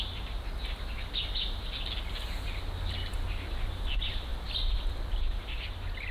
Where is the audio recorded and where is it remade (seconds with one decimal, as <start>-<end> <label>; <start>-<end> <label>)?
0.0-6.1 recorded